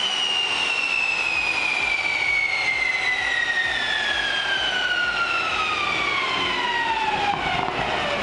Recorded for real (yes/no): yes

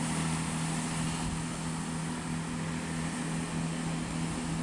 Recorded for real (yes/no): yes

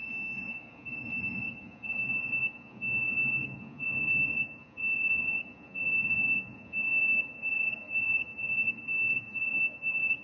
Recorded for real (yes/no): no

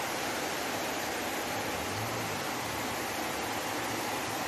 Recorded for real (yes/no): yes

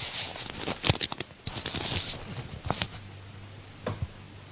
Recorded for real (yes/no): yes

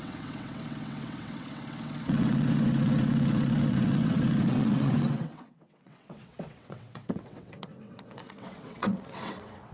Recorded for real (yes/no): no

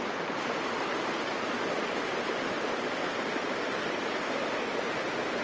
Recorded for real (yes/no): yes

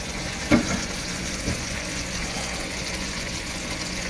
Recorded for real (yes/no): no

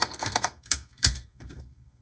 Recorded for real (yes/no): no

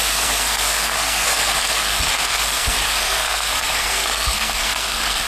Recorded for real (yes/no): no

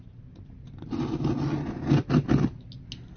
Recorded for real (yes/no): yes